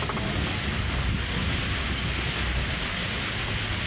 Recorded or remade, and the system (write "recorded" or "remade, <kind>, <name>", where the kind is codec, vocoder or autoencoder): recorded